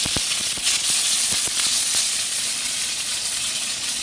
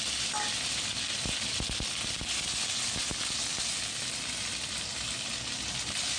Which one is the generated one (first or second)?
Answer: first